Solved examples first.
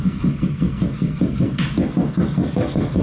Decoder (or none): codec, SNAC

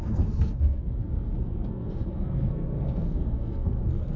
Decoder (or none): codec, SNAC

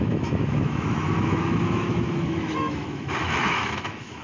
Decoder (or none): autoencoder, DAC-VAE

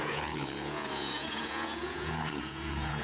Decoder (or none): vocoder, Vocos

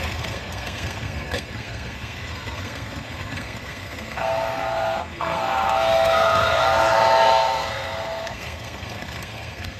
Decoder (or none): codec, SNAC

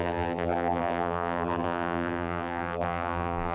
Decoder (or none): vocoder, BigVGAN v2